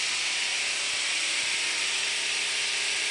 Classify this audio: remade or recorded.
recorded